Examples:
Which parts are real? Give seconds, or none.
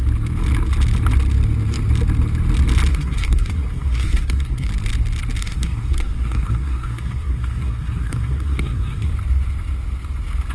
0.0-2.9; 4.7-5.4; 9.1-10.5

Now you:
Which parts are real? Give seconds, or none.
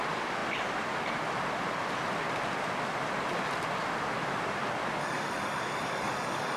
0.0-5.0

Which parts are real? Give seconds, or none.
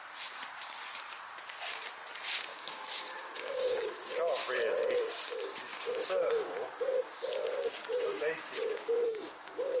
0.0-2.5; 4.1-5.7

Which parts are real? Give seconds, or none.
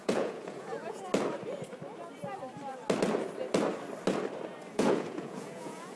1.1-4.7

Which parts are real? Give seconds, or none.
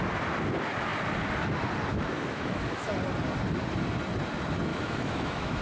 0.0-1.9; 2.9-4.7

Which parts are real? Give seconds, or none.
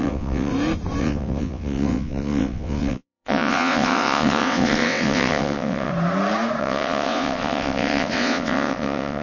0.5-1.0; 5.9-6.6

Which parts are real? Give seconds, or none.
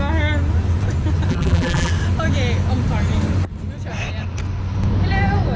0.0-1.3; 1.9-5.6